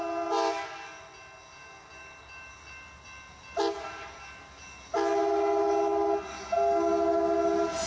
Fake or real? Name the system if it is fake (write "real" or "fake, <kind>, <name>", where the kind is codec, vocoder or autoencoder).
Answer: real